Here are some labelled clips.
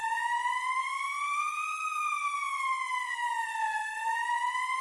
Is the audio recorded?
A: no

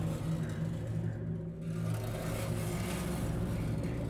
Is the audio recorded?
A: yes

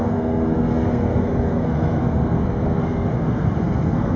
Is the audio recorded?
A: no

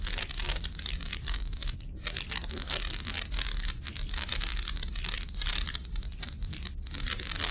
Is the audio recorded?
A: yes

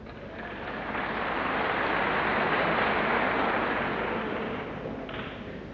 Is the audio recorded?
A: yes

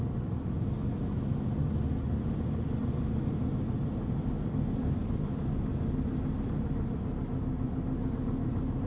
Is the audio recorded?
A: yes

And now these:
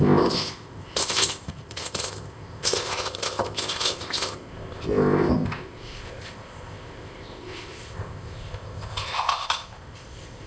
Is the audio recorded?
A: no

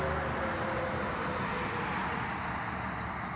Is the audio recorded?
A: yes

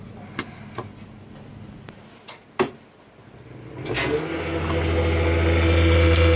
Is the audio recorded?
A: yes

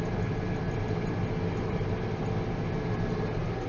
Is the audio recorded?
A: yes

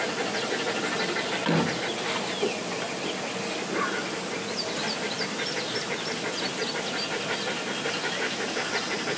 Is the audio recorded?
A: yes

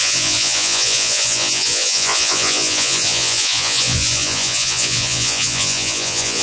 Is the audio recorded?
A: no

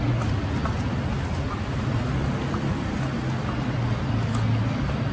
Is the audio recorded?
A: yes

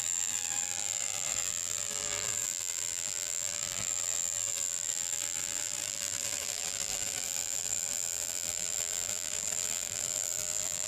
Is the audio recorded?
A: no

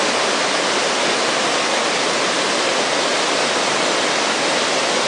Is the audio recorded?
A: yes